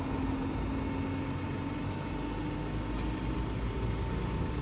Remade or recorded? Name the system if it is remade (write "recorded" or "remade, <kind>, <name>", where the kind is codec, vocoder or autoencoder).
recorded